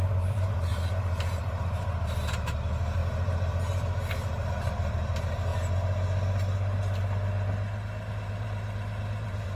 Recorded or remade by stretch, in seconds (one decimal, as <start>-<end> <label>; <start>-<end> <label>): 0.0-5.5 remade; 5.5-8.1 recorded; 8.1-9.6 remade